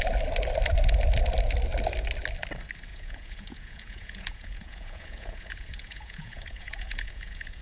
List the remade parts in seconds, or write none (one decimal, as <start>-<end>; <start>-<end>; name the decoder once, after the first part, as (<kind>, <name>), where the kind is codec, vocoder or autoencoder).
2.9-7.6 (vocoder, Vocos)